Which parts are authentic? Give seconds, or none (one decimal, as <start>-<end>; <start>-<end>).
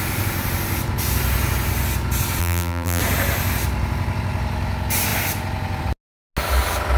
0.0-2.4; 3.0-7.0